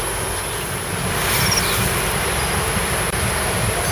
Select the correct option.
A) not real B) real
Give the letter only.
B